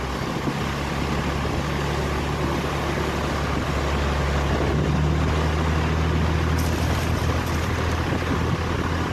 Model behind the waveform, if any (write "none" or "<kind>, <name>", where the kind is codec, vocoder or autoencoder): none